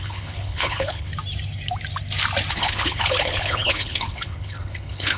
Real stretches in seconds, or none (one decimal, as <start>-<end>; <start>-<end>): 1.1-2.5